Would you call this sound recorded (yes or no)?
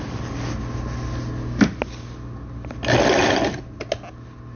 yes